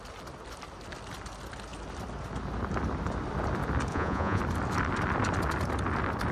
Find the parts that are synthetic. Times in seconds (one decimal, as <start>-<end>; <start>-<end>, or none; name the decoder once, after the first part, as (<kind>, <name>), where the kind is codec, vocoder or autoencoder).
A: 3.9-4.4 (vocoder, Vocos)